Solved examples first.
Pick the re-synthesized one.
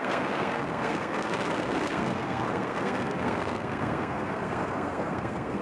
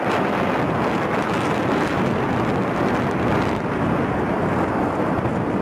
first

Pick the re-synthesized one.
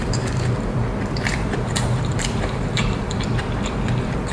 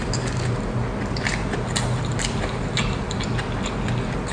first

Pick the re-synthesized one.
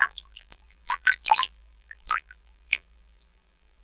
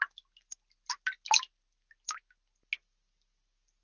first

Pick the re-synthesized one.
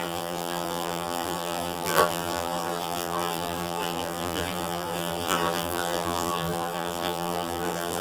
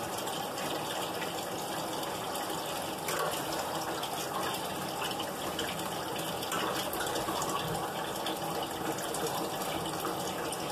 first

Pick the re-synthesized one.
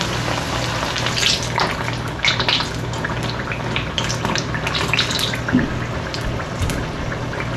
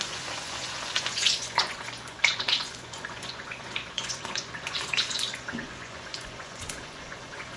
second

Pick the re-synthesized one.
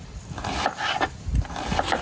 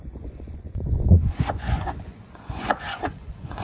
second